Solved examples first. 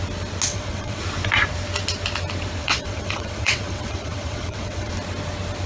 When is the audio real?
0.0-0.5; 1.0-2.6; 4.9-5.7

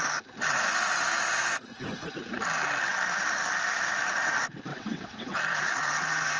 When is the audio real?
0.0-4.7; 5.4-6.4

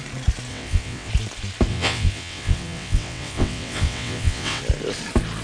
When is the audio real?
0.0-0.5; 1.1-1.7; 4.6-5.4

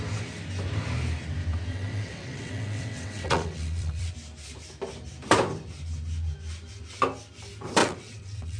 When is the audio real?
0.0-1.7; 4.1-7.8

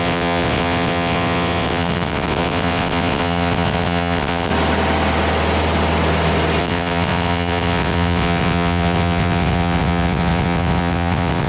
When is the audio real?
4.5-6.6

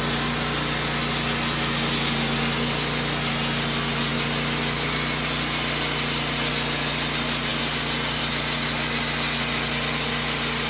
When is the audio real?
0.0-10.7

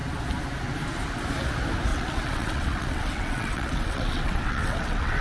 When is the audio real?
0.0-1.9